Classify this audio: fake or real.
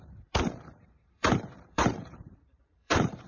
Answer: fake